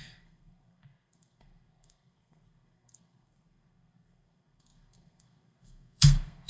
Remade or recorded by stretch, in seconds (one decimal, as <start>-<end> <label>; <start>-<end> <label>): 0.0-6.5 remade